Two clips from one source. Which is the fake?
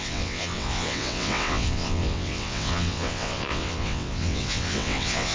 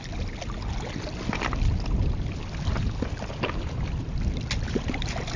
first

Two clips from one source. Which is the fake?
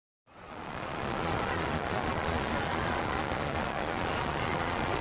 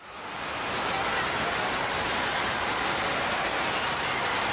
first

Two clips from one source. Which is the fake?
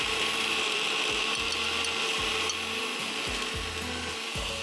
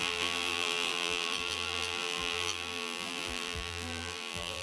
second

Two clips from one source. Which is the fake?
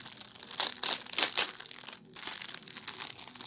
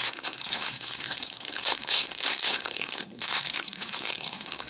second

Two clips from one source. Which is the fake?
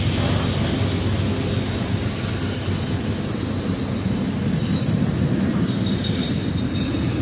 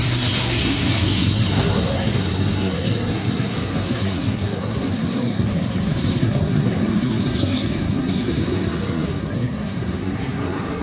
second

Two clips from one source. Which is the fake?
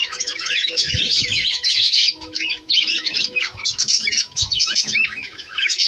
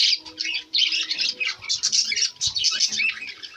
first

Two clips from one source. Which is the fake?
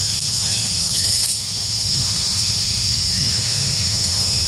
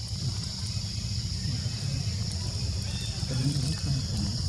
first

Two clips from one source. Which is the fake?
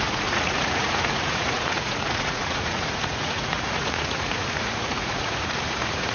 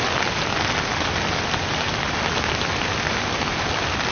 first